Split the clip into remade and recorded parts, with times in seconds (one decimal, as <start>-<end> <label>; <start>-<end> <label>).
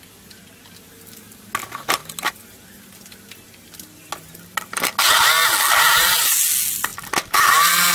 0.0-7.9 recorded